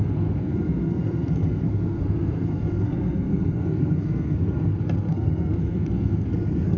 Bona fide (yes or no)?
no